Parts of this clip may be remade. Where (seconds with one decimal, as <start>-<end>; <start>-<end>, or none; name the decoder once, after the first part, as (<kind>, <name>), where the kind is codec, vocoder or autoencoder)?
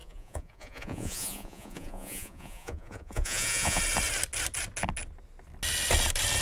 0.0-3.8 (vocoder, Vocos)